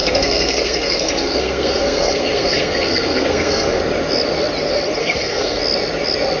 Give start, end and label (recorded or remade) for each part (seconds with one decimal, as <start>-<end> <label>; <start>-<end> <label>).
0.0-3.8 remade; 3.8-5.0 recorded; 5.0-5.6 remade; 5.6-6.4 recorded